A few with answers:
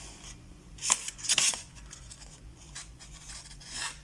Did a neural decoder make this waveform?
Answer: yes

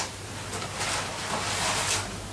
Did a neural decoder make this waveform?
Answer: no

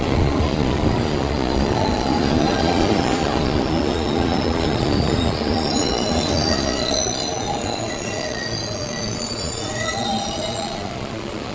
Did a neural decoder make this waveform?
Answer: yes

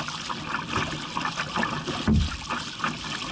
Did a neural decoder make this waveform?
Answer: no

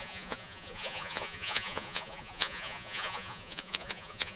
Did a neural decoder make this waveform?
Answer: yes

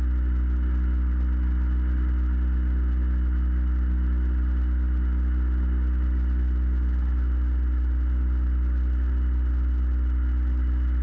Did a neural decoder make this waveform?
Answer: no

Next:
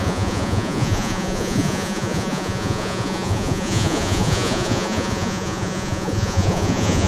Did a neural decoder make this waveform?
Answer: yes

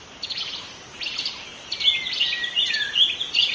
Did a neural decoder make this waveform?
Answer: no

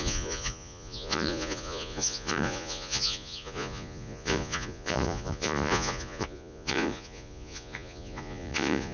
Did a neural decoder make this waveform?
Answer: yes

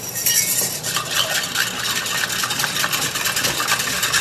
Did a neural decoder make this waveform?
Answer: no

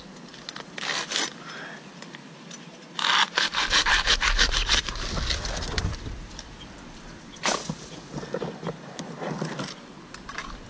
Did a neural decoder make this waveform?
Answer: no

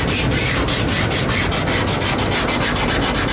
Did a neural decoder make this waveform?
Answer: no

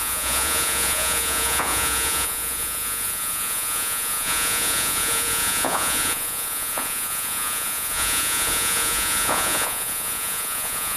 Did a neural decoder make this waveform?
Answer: yes